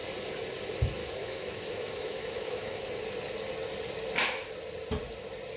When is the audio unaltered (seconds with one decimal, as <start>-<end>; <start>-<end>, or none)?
0.0-1.0; 2.9-5.6